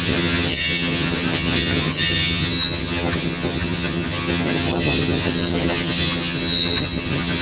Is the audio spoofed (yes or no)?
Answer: yes